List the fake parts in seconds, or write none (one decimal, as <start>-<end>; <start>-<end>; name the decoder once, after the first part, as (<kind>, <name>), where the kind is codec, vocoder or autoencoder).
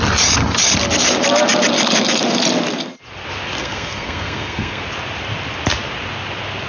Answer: 3.6-4.8 (codec, SNAC)